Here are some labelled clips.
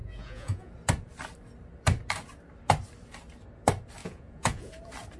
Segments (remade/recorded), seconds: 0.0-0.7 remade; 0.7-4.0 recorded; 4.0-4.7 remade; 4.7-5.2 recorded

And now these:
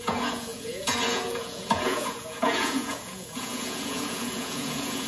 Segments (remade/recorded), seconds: 0.0-5.1 remade

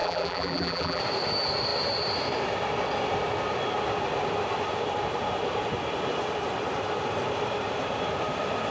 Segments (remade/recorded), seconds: 0.0-1.0 remade; 1.0-8.7 recorded

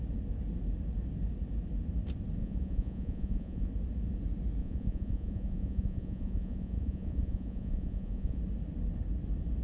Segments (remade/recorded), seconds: 0.0-2.4 recorded; 2.4-3.7 remade; 3.7-4.6 recorded; 4.6-8.4 remade; 8.4-9.6 recorded

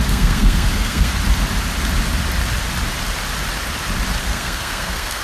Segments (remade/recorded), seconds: 0.0-1.1 remade; 1.1-4.2 recorded; 4.2-5.2 remade

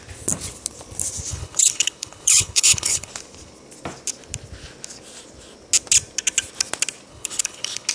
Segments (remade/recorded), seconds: 0.0-1.3 recorded; 1.3-3.1 remade; 3.1-7.1 recorded; 7.1-7.9 remade